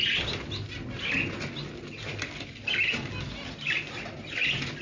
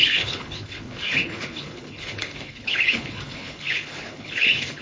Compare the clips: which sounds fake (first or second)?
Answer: second